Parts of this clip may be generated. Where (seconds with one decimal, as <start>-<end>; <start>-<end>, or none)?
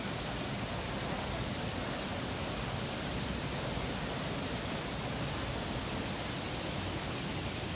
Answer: none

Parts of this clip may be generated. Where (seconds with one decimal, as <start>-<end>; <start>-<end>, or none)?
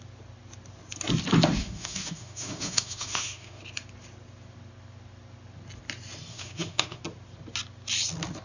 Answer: 1.6-3.6; 6.3-7.0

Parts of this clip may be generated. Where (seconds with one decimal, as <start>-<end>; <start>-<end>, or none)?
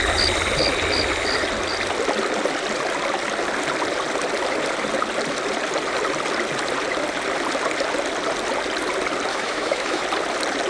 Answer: 9.3-10.0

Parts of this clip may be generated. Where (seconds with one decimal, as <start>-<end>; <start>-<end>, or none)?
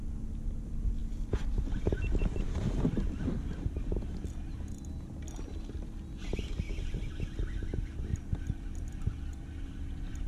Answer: none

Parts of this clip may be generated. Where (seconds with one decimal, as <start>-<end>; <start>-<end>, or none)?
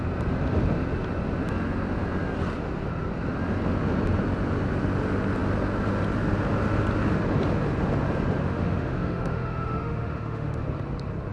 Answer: 8.4-10.6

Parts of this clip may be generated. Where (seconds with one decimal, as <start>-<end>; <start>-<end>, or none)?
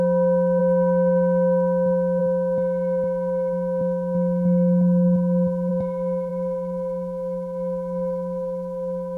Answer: 0.0-0.6; 2.2-9.2